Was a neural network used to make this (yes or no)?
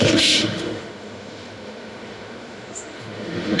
yes